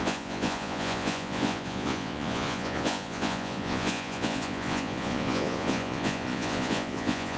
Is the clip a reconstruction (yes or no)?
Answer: yes